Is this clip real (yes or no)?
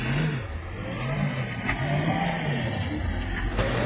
no